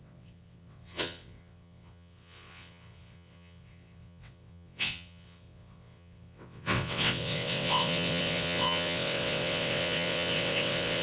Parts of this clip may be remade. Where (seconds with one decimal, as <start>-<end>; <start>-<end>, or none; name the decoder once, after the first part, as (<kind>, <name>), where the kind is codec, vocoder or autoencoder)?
0.0-11.0 (vocoder, WaveNeXt)